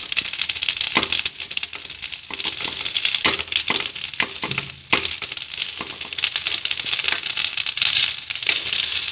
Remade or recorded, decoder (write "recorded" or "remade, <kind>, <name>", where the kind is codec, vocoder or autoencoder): recorded